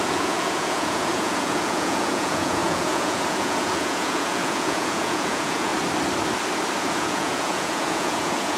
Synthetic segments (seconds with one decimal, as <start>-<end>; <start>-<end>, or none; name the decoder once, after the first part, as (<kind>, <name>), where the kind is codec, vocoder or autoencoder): 0.0-5.7 (vocoder, Vocos); 6.8-8.6